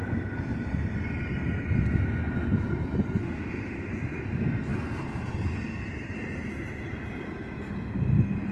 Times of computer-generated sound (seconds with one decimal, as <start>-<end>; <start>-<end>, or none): 3.2-3.9